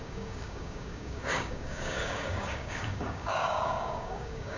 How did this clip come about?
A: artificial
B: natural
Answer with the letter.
A